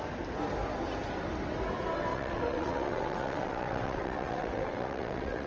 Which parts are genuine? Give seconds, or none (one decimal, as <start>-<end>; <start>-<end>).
0.0-2.1